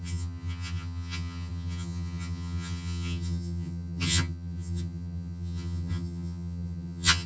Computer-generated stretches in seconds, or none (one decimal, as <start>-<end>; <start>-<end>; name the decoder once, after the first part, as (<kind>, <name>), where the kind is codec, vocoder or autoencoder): 0.0-7.3 (vocoder, HiFi-GAN)